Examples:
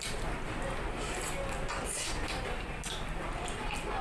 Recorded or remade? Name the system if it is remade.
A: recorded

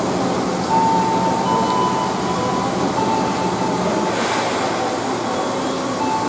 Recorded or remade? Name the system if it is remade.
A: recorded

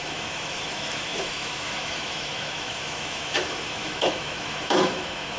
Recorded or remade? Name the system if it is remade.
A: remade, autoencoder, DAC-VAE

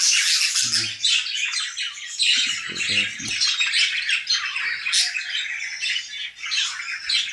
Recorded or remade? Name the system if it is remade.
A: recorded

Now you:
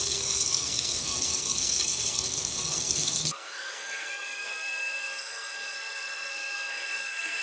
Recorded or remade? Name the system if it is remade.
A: remade, codec, SNAC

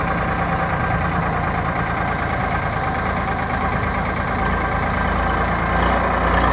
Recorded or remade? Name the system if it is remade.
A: recorded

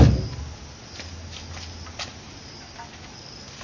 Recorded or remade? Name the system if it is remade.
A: recorded